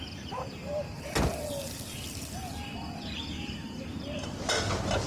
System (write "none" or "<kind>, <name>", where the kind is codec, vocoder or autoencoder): none